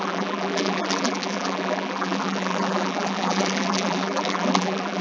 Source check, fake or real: fake